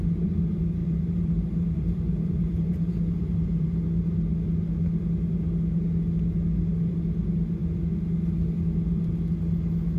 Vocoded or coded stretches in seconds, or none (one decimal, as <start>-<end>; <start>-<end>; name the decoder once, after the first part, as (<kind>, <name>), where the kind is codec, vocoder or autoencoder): 0.8-3.7 (vocoder, BigVGAN v2)